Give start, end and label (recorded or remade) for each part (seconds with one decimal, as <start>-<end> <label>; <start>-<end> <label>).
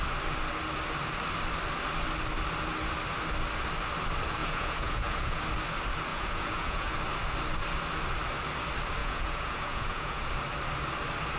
0.0-4.4 recorded; 4.4-5.4 remade; 5.4-6.1 recorded; 6.1-6.9 remade; 6.9-9.0 recorded; 9.0-10.3 remade; 10.3-11.4 recorded